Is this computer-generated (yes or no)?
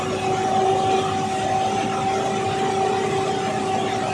no